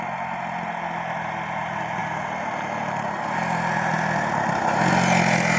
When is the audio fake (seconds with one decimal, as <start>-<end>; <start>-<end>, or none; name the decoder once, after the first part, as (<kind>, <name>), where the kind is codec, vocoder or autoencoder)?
none